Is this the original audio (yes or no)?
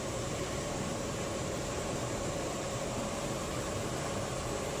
no